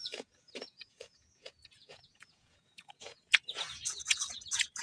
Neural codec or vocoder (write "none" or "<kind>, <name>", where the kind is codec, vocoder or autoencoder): vocoder, Vocos